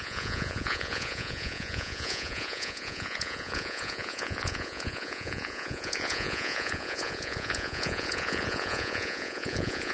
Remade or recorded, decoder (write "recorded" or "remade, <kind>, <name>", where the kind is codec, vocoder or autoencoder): remade, vocoder, Vocos